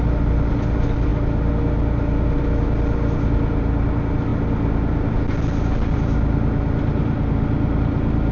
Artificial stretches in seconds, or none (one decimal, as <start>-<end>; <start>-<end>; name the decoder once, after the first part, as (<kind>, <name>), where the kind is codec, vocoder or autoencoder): none